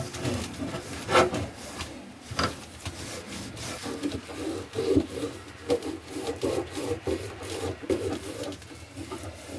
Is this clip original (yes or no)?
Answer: yes